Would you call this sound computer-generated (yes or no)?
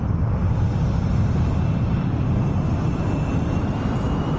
no